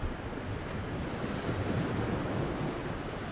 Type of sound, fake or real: real